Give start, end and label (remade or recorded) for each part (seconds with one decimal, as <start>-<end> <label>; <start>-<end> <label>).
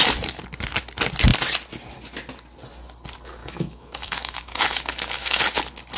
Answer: 0.0-3.4 recorded; 3.4-5.4 remade; 5.4-6.0 recorded